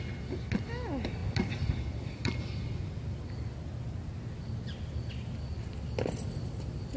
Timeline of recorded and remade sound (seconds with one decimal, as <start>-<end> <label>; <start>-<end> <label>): 0.0-7.0 recorded